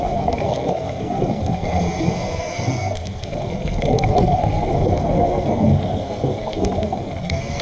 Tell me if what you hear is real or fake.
fake